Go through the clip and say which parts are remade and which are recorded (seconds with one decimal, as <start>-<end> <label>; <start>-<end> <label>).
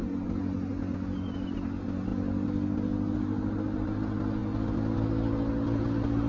0.0-6.3 recorded